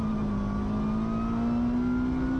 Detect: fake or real real